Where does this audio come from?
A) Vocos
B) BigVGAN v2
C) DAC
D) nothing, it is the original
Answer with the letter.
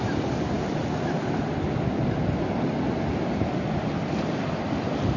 D